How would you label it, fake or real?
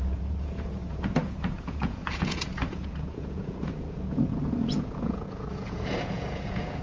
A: fake